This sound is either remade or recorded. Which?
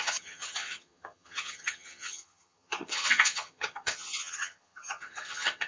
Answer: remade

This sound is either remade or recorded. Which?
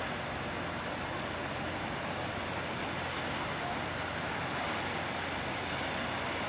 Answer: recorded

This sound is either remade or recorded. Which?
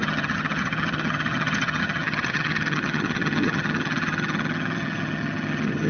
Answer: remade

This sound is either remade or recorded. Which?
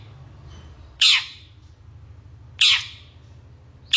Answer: recorded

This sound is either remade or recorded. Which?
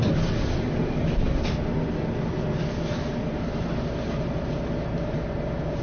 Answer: recorded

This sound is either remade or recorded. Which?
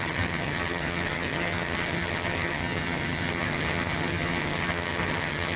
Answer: remade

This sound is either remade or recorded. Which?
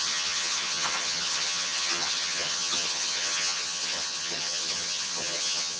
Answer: remade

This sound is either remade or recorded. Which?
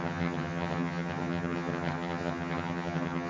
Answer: remade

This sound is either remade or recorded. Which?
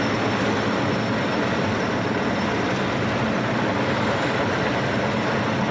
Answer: recorded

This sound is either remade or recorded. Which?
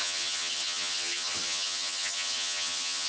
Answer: remade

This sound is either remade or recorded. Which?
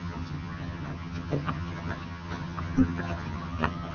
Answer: remade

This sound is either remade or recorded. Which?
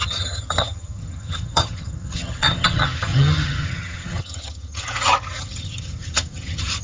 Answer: remade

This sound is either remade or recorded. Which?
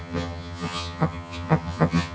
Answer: remade